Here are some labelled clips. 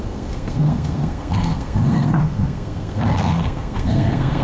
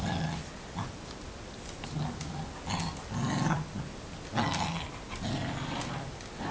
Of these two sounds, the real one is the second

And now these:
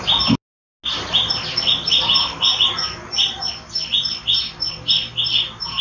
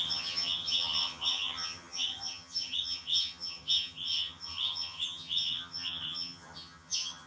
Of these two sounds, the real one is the first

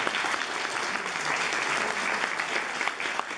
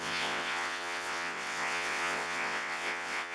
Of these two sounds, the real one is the first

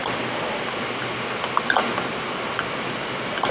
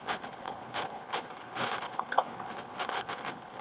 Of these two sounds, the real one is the first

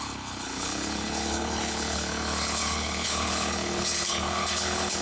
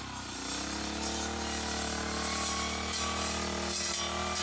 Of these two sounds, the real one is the second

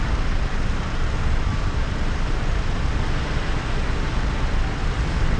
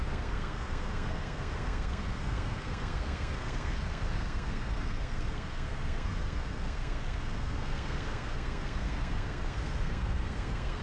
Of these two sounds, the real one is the first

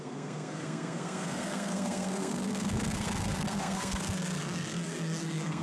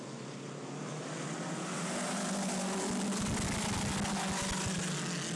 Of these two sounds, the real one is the second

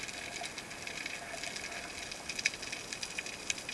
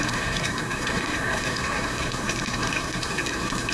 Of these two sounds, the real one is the first